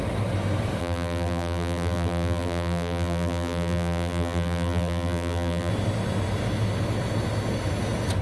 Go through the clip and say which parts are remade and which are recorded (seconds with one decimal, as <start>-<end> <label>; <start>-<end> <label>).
0.0-0.8 recorded; 0.8-5.7 remade; 5.7-8.2 recorded